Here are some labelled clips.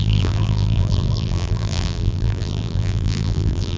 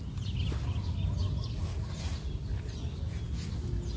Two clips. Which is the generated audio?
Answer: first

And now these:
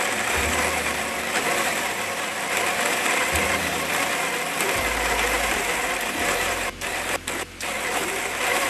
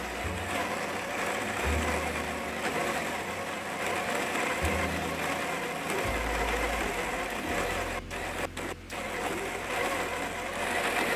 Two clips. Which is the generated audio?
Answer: first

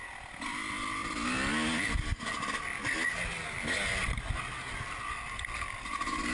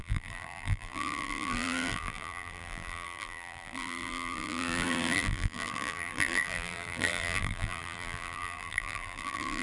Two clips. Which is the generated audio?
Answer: second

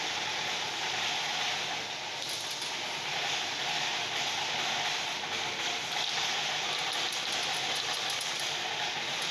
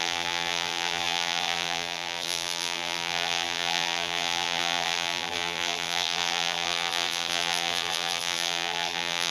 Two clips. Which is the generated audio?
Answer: second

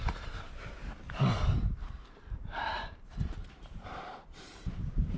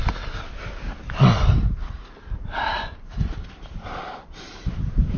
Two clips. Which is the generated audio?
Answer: first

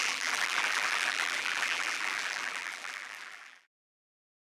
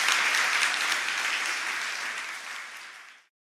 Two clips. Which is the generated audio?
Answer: first